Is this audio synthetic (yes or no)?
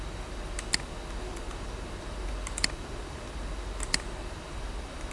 no